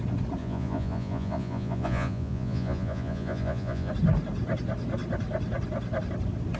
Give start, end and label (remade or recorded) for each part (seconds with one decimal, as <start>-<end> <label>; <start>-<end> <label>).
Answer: 0.0-0.4 recorded; 0.4-3.9 remade; 3.9-6.6 recorded

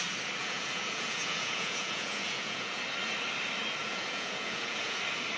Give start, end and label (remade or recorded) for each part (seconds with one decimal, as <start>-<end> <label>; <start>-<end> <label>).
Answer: 0.0-0.4 recorded; 0.4-2.8 remade; 2.8-3.8 recorded; 3.8-5.0 remade; 5.0-5.4 recorded

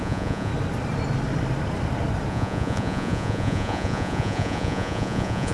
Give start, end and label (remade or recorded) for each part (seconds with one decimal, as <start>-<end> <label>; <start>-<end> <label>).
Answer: 0.0-0.5 remade; 0.5-2.3 recorded; 2.3-5.5 remade

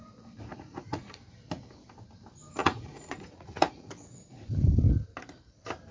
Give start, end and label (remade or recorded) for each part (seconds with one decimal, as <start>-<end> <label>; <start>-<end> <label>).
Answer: 0.0-0.5 recorded; 0.5-1.2 remade; 1.2-2.6 recorded; 2.6-3.9 remade; 3.9-5.9 recorded